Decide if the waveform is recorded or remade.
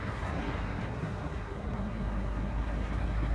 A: remade